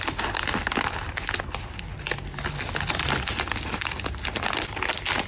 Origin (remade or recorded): recorded